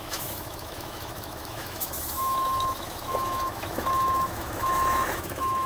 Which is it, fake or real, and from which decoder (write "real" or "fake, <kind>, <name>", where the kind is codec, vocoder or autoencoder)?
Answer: fake, autoencoder, DAC-VAE